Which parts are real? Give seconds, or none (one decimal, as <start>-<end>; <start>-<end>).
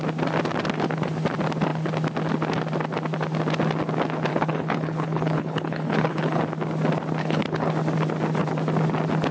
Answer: 0.0-4.3; 6.4-7.2; 7.7-9.3